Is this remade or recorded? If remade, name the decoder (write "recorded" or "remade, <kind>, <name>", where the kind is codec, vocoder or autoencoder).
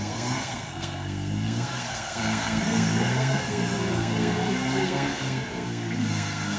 remade, codec, SNAC